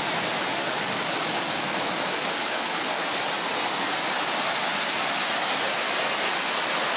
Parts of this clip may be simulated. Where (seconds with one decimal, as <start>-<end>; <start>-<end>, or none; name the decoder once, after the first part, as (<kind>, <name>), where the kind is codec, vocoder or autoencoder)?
0.5-3.0 (codec, DAC)